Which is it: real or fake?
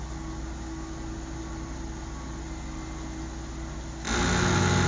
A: real